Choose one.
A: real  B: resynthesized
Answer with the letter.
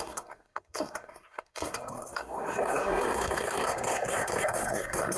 B